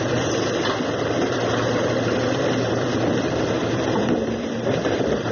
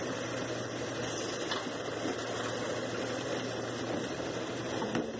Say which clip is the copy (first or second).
first